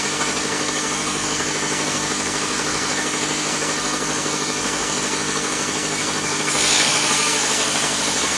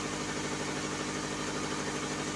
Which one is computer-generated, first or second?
first